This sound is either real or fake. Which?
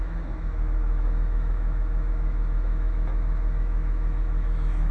fake